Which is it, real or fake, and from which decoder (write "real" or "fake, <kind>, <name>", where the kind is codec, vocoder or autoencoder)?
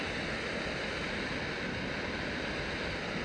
real